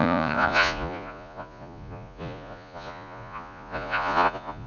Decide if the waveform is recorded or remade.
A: remade